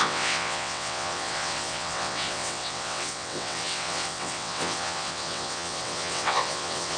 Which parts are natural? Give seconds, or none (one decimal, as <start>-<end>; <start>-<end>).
none